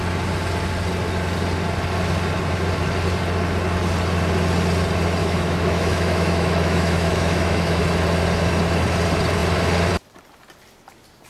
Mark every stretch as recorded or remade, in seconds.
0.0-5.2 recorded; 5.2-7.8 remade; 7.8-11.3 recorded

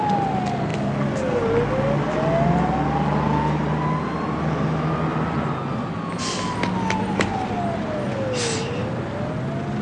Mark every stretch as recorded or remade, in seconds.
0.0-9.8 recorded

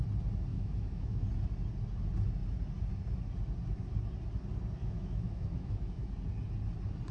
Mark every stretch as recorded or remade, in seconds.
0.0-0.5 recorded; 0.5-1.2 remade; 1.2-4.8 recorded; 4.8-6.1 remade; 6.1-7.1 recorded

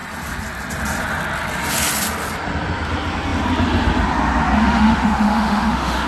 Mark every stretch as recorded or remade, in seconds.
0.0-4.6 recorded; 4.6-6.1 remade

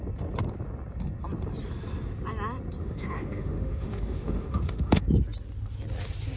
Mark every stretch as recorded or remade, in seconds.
0.0-2.8 recorded; 2.8-5.0 remade; 5.0-6.4 recorded

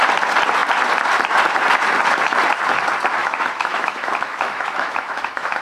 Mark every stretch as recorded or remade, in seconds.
0.0-3.2 recorded; 3.2-5.6 remade